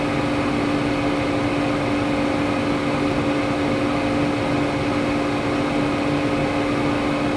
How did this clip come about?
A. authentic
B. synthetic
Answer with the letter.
A